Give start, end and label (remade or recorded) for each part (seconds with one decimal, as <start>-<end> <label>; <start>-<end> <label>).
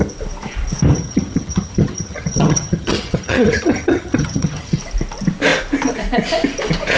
0.0-0.9 recorded; 0.9-4.8 remade; 4.8-7.0 recorded